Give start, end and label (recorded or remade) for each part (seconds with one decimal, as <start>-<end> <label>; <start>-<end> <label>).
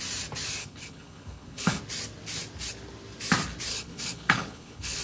0.0-0.6 recorded; 0.6-1.8 remade; 1.8-3.7 recorded; 3.7-5.0 remade